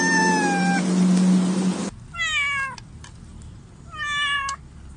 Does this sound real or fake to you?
real